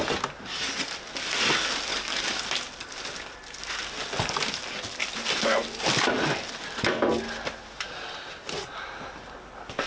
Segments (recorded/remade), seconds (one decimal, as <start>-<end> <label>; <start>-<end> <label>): 0.0-1.9 recorded; 1.9-2.4 remade; 2.4-9.9 recorded